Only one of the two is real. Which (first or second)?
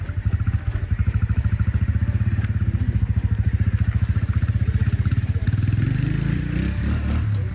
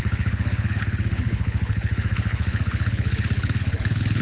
first